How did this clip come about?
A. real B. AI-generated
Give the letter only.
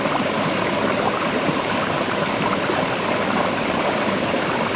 B